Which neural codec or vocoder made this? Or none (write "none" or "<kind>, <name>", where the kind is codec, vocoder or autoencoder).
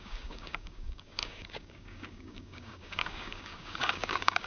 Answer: codec, DAC